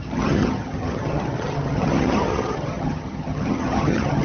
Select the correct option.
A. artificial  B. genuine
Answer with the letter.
A